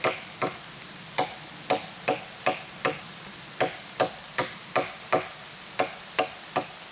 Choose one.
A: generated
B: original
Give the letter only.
B